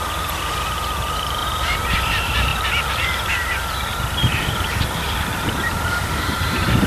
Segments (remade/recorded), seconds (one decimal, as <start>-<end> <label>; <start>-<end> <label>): 0.0-6.9 remade